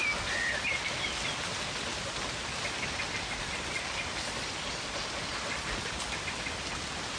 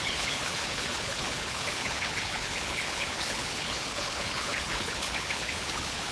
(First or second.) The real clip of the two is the first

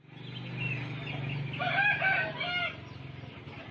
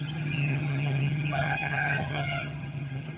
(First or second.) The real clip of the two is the first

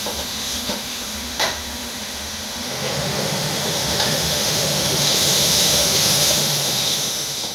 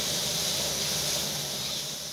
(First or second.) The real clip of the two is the second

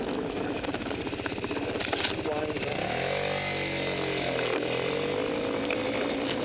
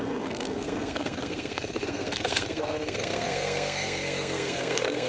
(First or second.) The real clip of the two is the first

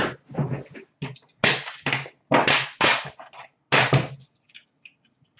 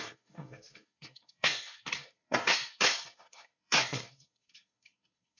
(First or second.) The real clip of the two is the first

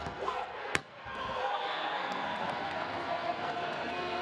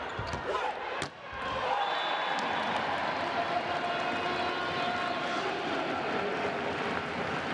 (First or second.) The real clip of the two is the second